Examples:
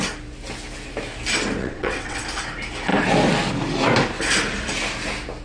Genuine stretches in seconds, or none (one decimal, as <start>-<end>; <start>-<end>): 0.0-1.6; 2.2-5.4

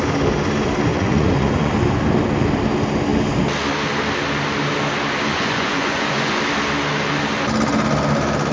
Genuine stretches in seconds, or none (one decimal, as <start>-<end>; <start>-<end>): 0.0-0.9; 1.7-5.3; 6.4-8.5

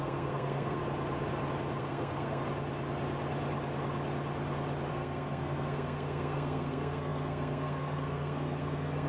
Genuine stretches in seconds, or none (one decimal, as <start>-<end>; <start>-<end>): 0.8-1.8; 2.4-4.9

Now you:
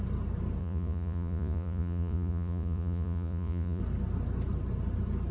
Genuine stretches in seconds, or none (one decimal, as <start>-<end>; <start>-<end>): 0.0-0.6; 3.8-5.3

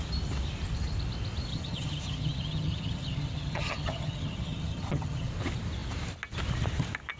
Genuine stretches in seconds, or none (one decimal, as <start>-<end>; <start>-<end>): 0.0-1.5; 5.3-7.2

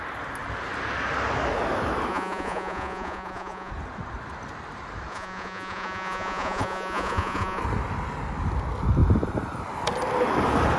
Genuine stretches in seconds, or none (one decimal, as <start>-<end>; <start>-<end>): 0.0-2.1; 3.7-5.1; 7.6-10.8

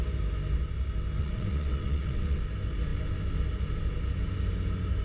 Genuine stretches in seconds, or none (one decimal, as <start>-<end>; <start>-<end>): 0.0-1.2; 2.4-5.0